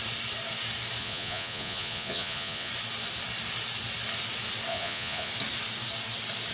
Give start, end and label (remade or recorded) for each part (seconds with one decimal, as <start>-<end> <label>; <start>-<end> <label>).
0.0-1.0 recorded; 1.0-2.7 remade; 2.7-4.7 recorded; 4.7-5.3 remade; 5.3-6.5 recorded